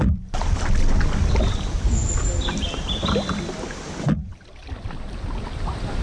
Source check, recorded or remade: recorded